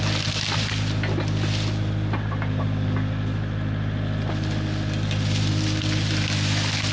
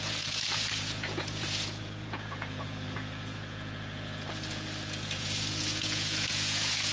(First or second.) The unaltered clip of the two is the first